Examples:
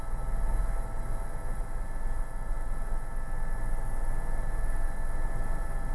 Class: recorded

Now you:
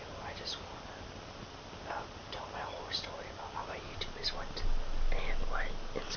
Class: recorded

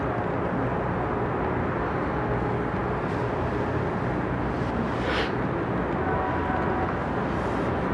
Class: recorded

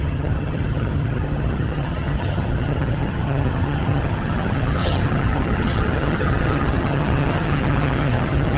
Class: remade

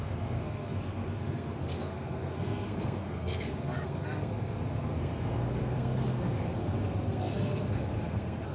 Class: remade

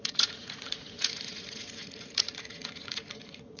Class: remade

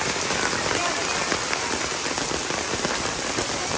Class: recorded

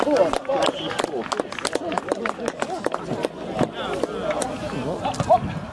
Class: recorded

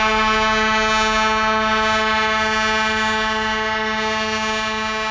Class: recorded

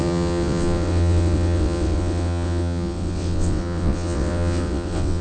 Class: remade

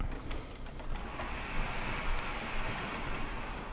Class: recorded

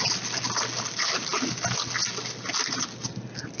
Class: recorded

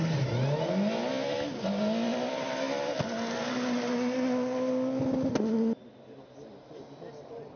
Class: recorded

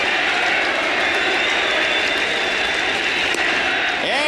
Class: recorded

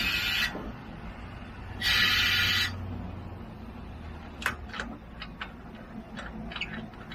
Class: recorded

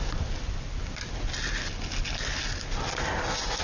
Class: recorded